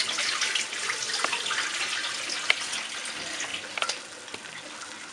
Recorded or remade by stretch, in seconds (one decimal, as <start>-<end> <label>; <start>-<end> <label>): 0.0-5.1 recorded